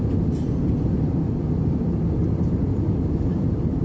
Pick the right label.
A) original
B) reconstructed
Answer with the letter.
B